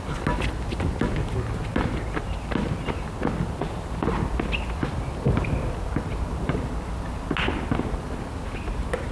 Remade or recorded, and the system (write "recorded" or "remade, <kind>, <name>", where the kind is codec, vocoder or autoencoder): recorded